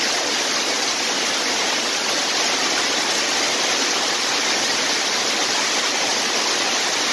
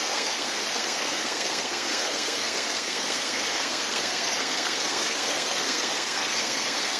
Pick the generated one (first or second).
second